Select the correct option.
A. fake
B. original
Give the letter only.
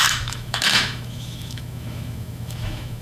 A